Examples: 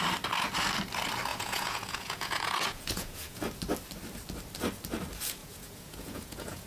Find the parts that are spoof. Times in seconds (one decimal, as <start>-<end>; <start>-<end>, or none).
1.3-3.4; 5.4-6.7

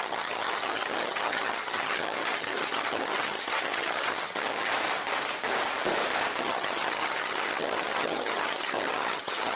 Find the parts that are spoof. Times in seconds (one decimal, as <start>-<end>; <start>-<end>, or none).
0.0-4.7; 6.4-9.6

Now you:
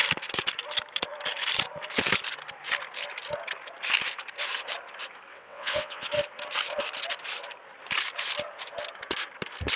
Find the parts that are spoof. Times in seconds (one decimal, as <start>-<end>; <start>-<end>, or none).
5.3-6.1

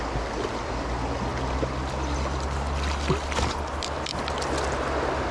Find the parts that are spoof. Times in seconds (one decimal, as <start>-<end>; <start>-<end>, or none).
none

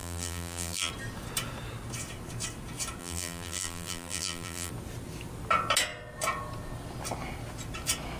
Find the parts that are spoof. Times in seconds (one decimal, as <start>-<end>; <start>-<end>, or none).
0.0-0.9; 3.0-4.7

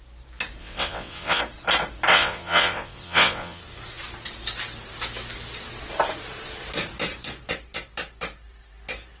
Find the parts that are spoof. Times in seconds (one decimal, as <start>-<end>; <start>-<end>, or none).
0.6-1.4; 2.1-3.6

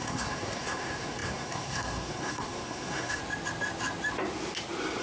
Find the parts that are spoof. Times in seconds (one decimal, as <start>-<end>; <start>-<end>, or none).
0.0-3.2